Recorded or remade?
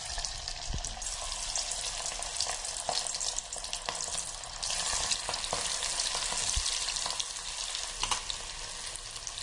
recorded